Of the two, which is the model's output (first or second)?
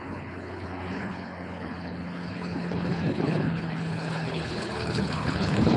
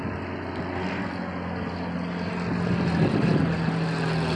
first